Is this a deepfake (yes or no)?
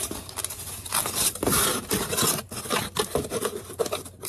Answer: no